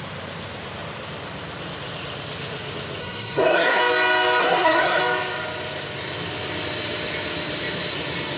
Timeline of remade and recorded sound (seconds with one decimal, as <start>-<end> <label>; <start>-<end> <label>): 0.0-3.0 recorded; 3.0-3.8 remade; 3.8-4.4 recorded; 4.4-5.0 remade; 5.0-8.4 recorded